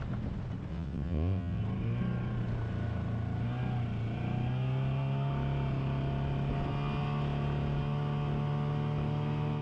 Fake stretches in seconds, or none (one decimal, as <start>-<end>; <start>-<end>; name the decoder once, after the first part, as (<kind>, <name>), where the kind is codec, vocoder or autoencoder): 0.7-1.6 (vocoder, WaveNeXt)